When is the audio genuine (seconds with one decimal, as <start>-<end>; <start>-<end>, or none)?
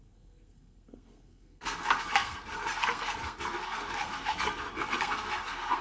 none